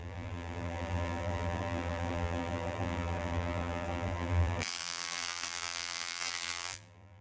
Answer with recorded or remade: remade